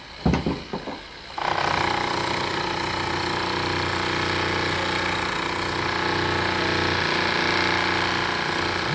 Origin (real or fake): real